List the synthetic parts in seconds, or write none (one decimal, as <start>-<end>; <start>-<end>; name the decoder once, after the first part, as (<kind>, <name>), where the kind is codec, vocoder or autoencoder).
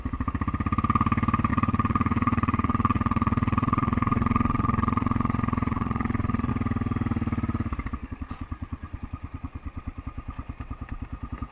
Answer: 1.5-6.5 (vocoder, Vocos); 8.0-10.0